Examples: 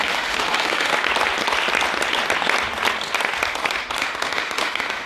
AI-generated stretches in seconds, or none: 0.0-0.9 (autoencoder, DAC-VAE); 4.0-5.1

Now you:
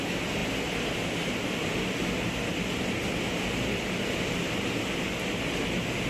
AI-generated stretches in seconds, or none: none

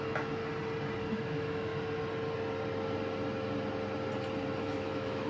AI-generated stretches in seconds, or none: 0.0-0.4 (autoencoder, DAC-VAE); 1.1-1.7; 4.6-5.3

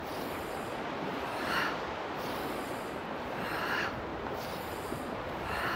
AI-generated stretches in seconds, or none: none

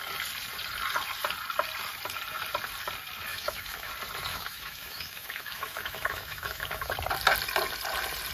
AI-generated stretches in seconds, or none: 3.3-3.9 (autoencoder, DAC-VAE); 4.3-6.9

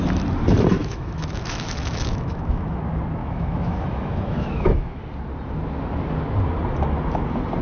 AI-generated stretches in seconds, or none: 0.8-2.8 (autoencoder, DAC-VAE); 3.2-5.0

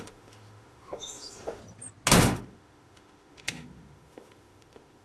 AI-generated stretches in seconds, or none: 0.0-1.6 (autoencoder, DAC-VAE); 2.2-5.0

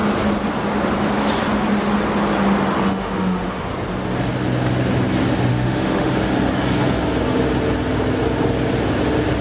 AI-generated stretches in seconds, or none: 2.9-3.6 (autoencoder, DAC-VAE); 5.5-6.1